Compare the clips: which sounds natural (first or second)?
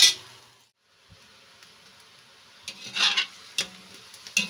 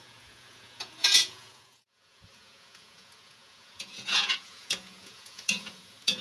first